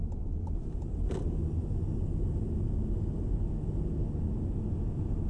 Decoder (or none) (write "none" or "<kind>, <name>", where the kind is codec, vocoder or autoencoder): none